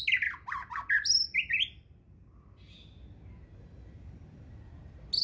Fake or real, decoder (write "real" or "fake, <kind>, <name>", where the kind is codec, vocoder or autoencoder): real